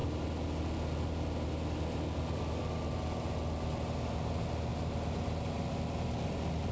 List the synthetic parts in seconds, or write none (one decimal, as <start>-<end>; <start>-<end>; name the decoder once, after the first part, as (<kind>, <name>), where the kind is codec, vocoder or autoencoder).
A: none

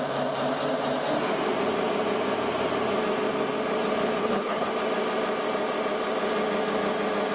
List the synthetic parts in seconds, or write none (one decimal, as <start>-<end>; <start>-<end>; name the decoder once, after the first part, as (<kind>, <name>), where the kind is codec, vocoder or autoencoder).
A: 4.2-4.7 (codec, HILCodec)

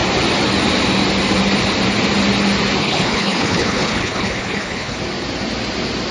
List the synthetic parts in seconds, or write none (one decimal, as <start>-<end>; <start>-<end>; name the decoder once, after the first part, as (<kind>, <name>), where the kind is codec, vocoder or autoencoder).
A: 2.8-5.0 (codec, HILCodec)

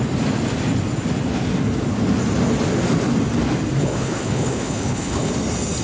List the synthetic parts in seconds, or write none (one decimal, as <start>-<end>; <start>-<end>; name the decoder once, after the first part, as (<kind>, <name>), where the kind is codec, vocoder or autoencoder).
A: 3.8-5.3 (codec, HILCodec)

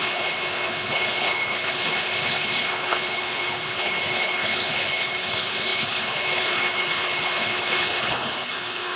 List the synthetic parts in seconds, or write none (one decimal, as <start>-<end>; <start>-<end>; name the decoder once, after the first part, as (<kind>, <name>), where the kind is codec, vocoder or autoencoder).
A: 0.0-9.0 (codec, HILCodec)

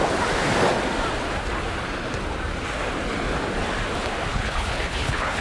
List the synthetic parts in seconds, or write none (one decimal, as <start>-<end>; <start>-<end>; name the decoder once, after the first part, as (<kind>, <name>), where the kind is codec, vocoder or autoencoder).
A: 4.3-5.4 (codec, HILCodec)

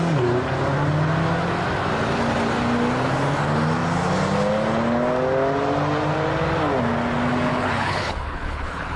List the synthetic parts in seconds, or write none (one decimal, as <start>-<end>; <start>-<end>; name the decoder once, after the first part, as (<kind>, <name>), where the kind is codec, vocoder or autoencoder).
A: 7.5-9.0 (codec, HILCodec)